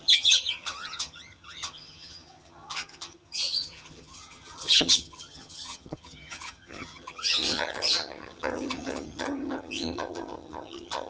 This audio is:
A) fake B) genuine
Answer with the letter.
A